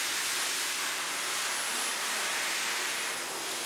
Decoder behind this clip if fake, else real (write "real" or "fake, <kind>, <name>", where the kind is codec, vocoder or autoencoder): real